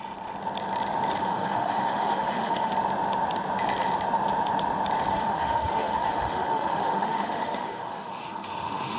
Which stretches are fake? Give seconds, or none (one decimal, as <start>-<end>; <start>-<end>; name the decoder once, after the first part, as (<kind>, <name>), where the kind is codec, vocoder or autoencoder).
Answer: 1.2-2.7 (autoencoder, DAC-VAE); 5.1-9.0